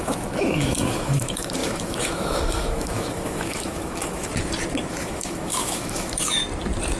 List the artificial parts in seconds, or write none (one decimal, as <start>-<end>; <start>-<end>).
0.0-4.3; 4.9-6.4